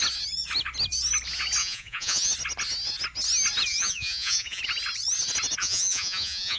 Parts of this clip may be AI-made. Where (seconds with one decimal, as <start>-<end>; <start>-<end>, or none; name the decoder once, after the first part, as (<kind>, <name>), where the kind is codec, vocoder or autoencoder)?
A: 1.6-2.3 (vocoder, Vocos); 3.7-4.6; 5.6-6.6